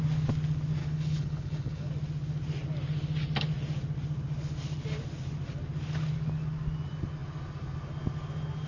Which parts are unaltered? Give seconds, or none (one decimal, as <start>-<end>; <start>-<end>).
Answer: 0.0-0.8; 1.9-8.7